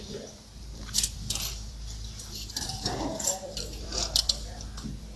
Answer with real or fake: fake